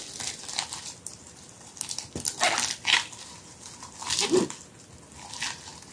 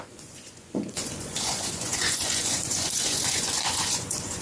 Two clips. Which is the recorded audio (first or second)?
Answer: first